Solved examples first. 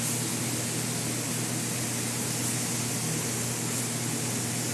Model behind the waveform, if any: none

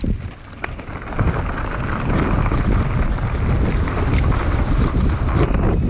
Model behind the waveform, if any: none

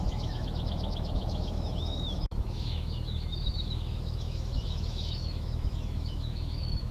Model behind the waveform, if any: autoencoder, DAC-VAE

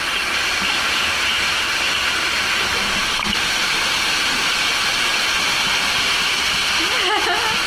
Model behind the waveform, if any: none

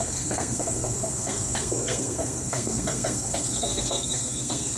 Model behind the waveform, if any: codec, SNAC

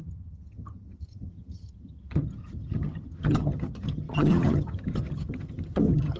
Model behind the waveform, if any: vocoder, HiFi-GAN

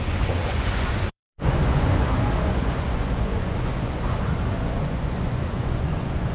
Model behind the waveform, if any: vocoder, Vocos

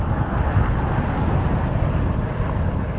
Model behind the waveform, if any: none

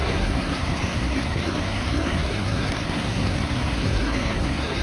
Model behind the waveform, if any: codec, SNAC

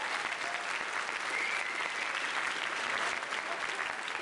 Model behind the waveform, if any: none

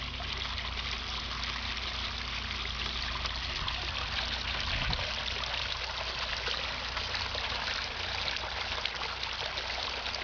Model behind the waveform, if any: none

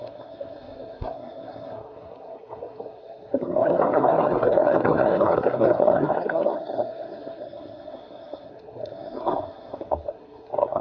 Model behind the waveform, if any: codec, SNAC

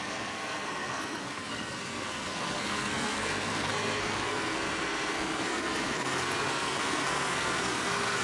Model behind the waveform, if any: codec, SNAC